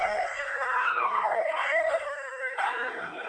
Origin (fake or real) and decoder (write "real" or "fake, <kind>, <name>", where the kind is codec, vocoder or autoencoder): fake, codec, SNAC